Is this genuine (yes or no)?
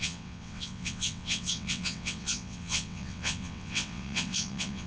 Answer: no